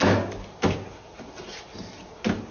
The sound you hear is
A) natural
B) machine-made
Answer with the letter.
A